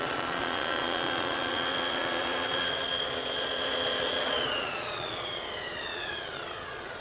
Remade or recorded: remade